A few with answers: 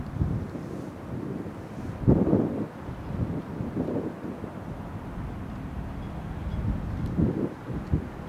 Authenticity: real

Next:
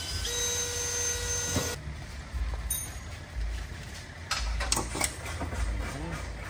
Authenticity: real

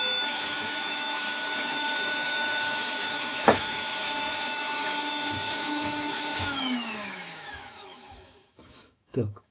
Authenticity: fake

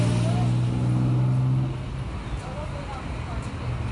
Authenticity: real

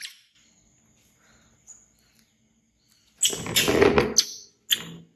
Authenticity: real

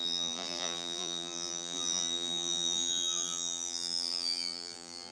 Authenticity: fake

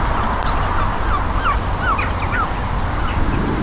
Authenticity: real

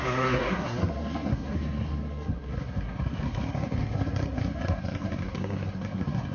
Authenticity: fake